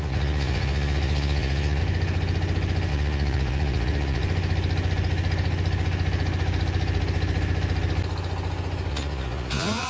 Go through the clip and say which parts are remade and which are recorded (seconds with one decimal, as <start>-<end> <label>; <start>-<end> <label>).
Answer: 0.0-1.8 remade; 1.8-2.9 recorded; 2.9-4.2 remade; 4.2-8.9 recorded; 8.9-9.9 remade